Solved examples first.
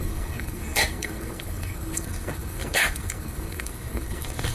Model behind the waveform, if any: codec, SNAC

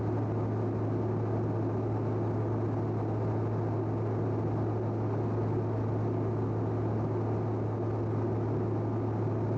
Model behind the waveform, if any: none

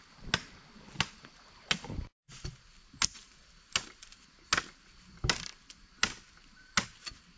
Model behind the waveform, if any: none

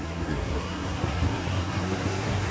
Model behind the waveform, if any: codec, SNAC